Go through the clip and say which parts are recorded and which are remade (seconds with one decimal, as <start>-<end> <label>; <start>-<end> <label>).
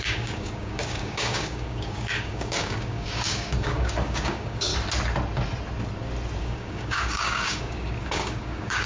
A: 0.0-4.7 remade; 4.7-6.4 recorded; 6.4-8.9 remade